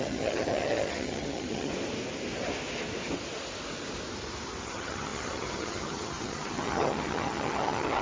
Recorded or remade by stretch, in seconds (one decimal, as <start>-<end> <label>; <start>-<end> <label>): 0.0-1.7 remade; 1.7-4.6 recorded; 4.6-8.0 remade